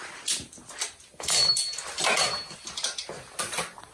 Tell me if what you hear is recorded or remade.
recorded